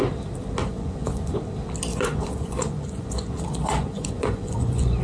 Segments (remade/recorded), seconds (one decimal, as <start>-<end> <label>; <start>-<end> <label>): 0.0-0.6 recorded; 0.6-1.5 remade; 1.5-1.9 recorded; 1.9-5.0 remade